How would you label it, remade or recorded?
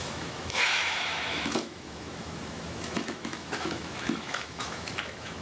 remade